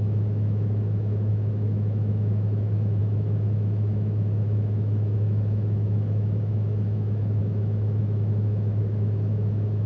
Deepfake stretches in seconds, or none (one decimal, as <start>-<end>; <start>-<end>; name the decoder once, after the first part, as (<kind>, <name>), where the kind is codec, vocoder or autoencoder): 0.0-9.9 (autoencoder, DAC-VAE)